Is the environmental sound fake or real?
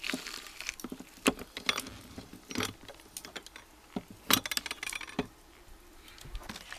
real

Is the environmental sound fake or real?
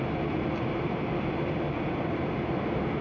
real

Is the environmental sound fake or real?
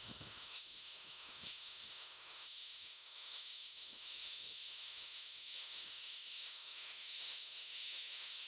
fake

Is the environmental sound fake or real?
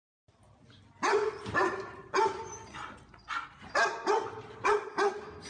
real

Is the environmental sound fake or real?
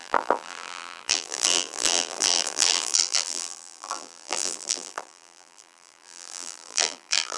fake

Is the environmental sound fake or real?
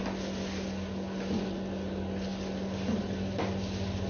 real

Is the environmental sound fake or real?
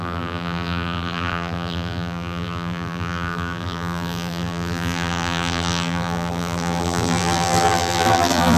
fake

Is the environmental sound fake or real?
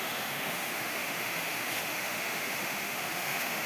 fake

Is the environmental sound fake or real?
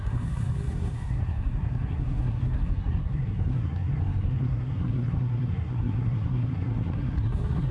fake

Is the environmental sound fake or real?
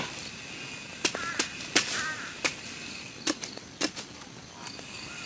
real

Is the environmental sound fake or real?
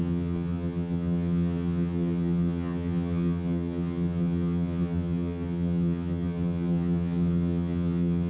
fake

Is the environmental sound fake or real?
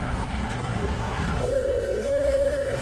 fake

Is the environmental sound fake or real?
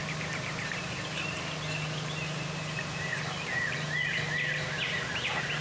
real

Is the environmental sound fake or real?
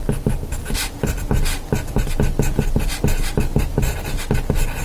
real